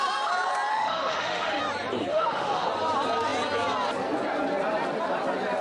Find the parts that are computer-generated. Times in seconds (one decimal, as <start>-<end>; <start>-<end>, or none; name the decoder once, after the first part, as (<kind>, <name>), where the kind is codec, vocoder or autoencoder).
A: 0.7-1.6 (autoencoder, DAC-VAE); 2.1-2.7